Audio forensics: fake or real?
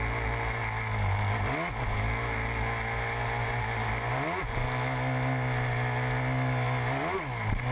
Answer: real